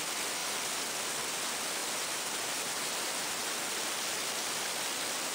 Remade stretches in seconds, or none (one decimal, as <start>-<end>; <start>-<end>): none

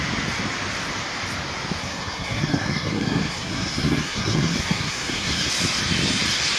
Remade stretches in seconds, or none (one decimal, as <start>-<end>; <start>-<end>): 1.8-5.5

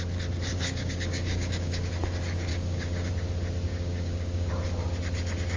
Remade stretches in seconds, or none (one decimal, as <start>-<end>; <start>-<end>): 0.5-1.9; 2.5-3.1; 3.7-4.5

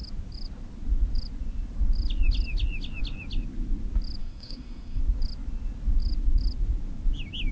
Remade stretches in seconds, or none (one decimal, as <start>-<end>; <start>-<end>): 4.2-5.0

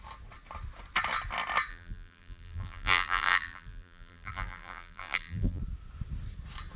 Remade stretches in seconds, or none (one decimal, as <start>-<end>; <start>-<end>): 1.7-5.6

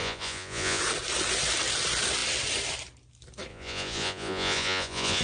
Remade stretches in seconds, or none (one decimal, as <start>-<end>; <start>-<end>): 0.0-0.8; 3.5-5.2

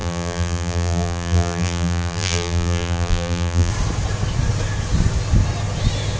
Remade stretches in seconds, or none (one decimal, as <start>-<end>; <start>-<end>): 0.0-3.7

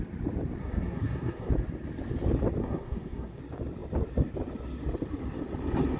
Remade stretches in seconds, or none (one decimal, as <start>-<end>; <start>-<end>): 0.6-1.5; 2.6-3.4